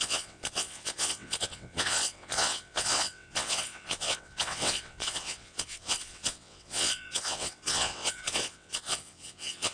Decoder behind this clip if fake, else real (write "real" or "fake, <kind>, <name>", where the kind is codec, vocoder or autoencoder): fake, vocoder, WaveNeXt